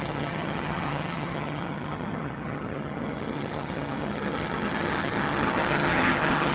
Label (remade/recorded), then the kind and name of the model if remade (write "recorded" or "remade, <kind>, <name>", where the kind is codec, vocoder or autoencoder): remade, vocoder, HiFi-GAN